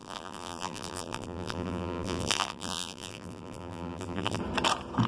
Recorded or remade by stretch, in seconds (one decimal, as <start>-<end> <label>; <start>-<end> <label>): 0.0-4.4 remade; 4.4-5.1 recorded